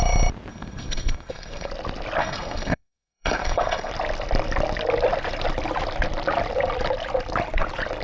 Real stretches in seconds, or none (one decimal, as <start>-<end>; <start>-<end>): 0.0-0.5; 1.7-2.2; 3.9-8.0